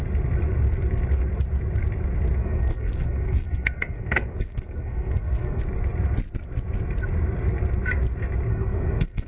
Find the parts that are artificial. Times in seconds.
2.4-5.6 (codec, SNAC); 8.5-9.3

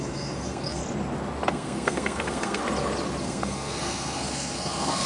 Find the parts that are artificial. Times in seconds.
0.0-0.8 (codec, SNAC); 1.5-2.6; 3.2-5.1

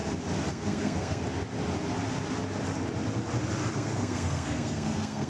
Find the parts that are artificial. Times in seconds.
0.5-1.2 (codec, SNAC); 3.7-5.3